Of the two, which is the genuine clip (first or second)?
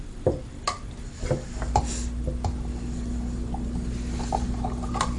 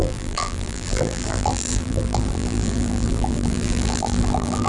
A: first